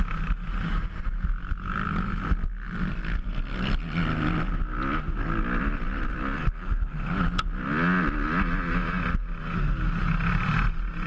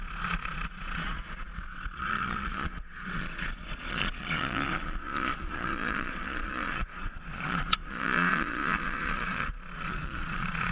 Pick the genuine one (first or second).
first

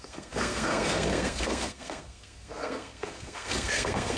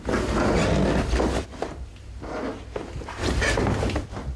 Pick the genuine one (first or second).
second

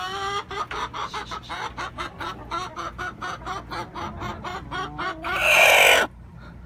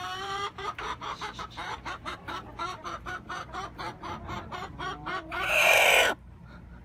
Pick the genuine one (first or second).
first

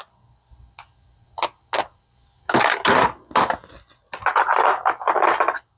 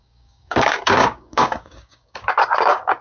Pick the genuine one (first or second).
first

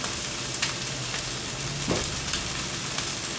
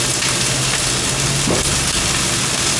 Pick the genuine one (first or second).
second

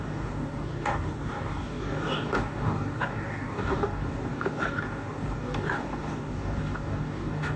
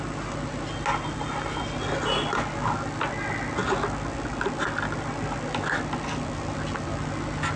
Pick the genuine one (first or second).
second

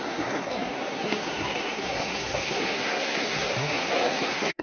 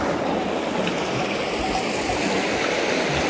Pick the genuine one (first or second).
second